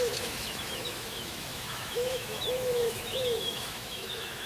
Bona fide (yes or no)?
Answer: no